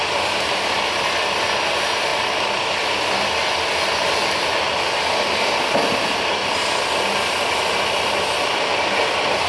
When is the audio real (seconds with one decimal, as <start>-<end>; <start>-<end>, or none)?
0.0-9.5

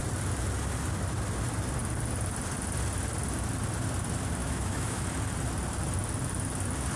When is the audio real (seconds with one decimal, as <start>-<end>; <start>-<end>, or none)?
0.0-4.4; 5.0-7.0

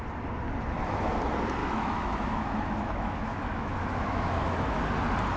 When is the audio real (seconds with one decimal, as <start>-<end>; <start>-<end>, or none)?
0.0-1.6; 4.8-5.4

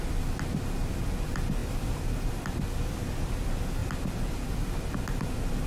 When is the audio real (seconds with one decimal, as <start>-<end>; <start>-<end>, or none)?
0.0-5.7

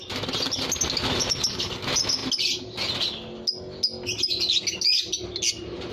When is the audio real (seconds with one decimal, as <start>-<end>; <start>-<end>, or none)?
0.0-5.9

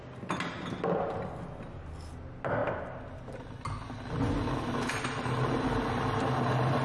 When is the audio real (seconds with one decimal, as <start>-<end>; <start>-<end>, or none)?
0.0-6.8

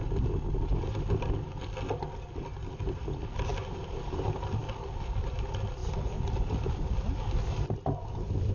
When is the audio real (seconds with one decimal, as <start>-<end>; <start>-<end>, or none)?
0.0-8.5

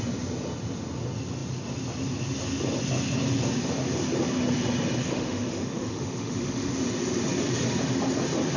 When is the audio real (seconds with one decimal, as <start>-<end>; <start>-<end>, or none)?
0.0-5.0; 6.7-8.6